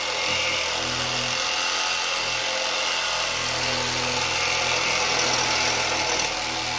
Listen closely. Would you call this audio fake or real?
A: real